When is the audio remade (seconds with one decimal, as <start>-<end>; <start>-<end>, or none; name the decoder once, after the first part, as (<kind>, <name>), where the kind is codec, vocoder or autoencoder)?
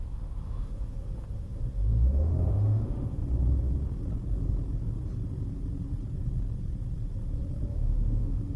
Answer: 0.0-3.2 (autoencoder, DAC-VAE); 7.7-8.6